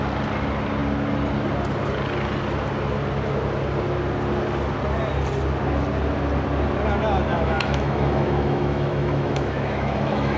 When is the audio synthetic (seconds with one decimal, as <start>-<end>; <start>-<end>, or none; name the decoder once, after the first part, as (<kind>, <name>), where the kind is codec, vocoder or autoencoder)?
7.3-10.4 (autoencoder, DAC-VAE)